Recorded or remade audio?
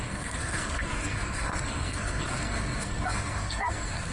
remade